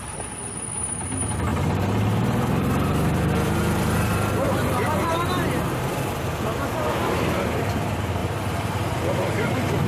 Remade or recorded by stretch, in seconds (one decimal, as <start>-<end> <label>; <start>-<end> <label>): 0.0-1.5 recorded; 1.5-6.1 remade; 6.1-8.2 recorded; 8.2-9.5 remade; 9.5-9.9 recorded